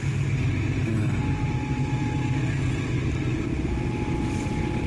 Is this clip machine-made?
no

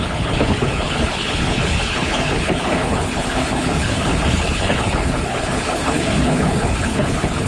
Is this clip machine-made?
yes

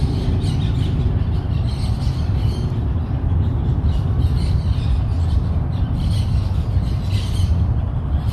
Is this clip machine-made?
no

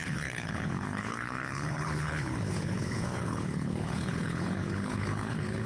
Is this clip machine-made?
yes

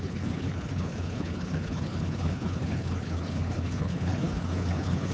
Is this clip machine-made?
yes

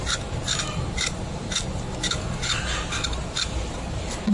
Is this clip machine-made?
no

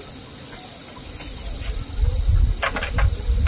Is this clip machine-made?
no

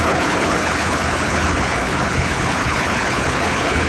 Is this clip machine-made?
yes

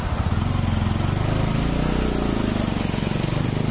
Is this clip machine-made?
no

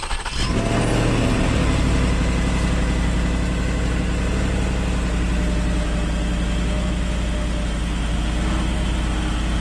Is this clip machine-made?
no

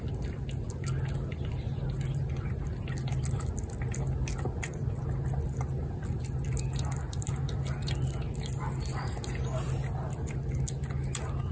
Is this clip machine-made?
no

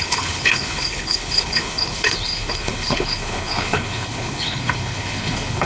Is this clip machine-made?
yes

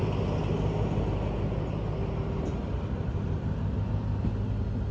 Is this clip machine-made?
no